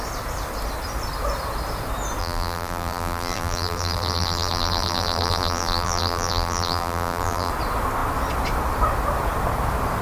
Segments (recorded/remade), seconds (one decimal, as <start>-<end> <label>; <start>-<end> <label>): 0.0-2.2 recorded; 2.2-7.5 remade; 7.5-10.0 recorded